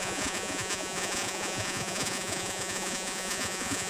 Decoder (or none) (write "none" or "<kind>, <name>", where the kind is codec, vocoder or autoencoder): vocoder, Vocos